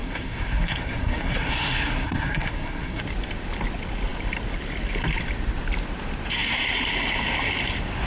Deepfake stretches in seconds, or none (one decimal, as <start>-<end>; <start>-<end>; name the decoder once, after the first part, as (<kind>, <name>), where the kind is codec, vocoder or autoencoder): 0.0-3.0 (codec, SNAC)